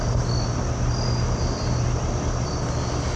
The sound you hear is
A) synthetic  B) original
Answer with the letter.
B